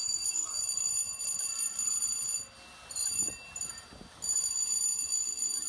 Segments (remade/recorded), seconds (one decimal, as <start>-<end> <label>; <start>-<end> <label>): 0.0-0.6 remade; 0.6-5.7 recorded